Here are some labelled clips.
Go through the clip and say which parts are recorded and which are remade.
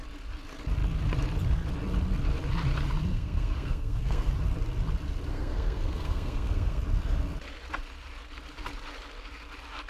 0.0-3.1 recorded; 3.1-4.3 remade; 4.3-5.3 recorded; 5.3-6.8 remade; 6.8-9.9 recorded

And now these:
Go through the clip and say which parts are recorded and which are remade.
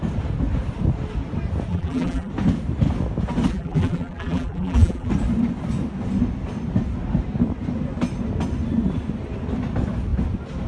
0.0-1.7 recorded; 1.7-2.3 remade; 2.3-3.5 recorded; 3.5-5.1 remade; 5.1-10.7 recorded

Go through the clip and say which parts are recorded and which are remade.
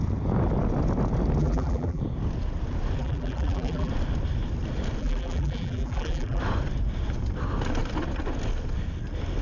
0.0-1.4 recorded; 1.4-2.0 remade; 2.0-3.0 recorded; 3.0-3.9 remade; 3.9-5.0 recorded; 5.0-6.4 remade; 6.4-9.4 recorded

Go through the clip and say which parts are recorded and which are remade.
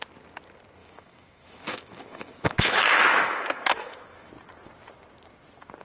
0.0-0.8 recorded; 0.8-4.3 remade; 4.3-5.8 recorded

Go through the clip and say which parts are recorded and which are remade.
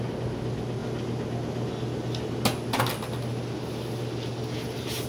0.0-5.1 recorded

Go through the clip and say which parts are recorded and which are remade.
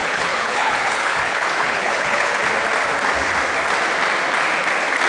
0.0-2.4 remade; 2.4-5.1 recorded